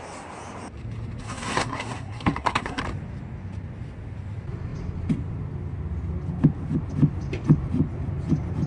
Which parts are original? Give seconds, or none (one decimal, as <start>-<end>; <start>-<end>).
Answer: 0.0-1.2; 2.8-8.7